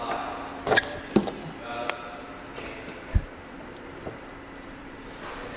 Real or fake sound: real